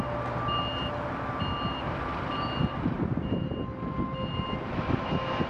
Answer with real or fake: real